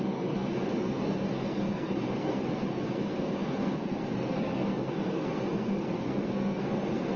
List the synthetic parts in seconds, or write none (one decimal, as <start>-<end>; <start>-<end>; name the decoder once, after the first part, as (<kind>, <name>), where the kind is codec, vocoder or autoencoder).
0.0-7.2 (codec, SNAC)